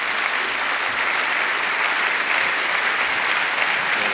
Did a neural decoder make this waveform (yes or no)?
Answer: no